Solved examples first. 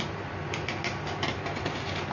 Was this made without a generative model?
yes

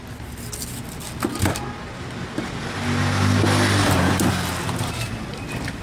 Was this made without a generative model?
yes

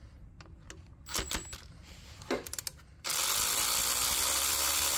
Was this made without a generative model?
yes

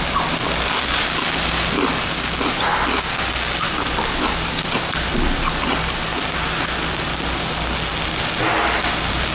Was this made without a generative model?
yes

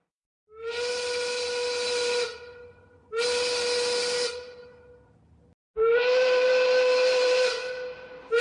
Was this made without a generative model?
yes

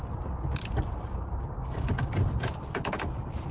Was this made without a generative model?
yes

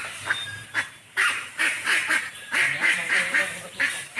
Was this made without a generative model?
no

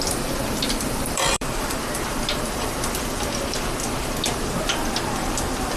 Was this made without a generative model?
no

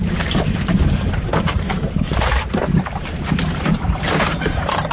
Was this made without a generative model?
no